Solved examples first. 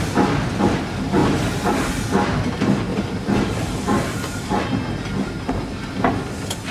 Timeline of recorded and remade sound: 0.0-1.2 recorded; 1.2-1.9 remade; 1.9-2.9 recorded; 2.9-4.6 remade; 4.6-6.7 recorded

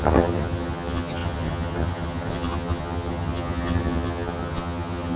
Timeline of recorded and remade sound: 0.0-5.2 remade

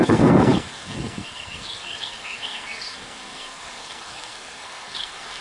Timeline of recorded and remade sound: 0.0-5.4 remade

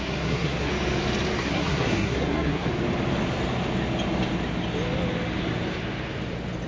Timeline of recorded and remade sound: 0.0-0.7 remade; 0.7-1.4 recorded; 1.4-2.7 remade; 2.7-6.7 recorded

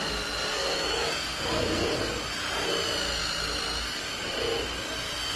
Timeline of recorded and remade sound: 0.0-0.5 recorded; 0.5-2.0 remade; 2.0-5.4 recorded

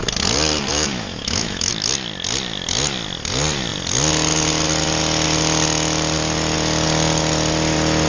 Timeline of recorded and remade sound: 0.0-0.7 recorded; 0.7-1.7 remade; 1.7-8.1 recorded

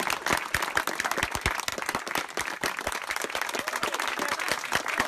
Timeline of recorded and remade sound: 0.0-1.7 recorded; 1.7-4.5 remade; 4.5-5.1 recorded

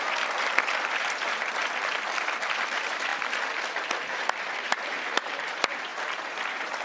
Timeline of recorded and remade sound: 0.0-1.6 remade; 1.6-2.1 recorded; 2.1-3.1 remade; 3.1-4.1 recorded; 4.1-6.8 remade